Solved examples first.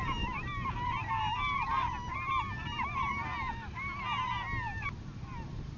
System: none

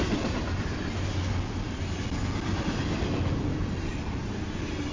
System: none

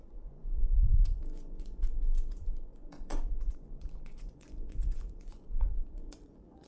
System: vocoder, Vocos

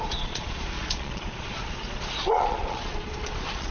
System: vocoder, Vocos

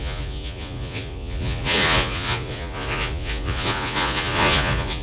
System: vocoder, Vocos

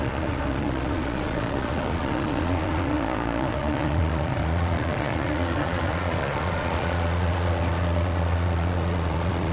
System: vocoder, Vocos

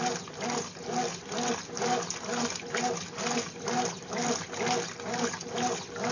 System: none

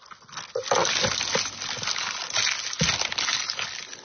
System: none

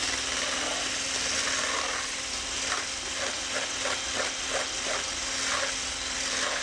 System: none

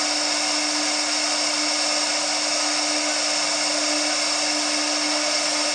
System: none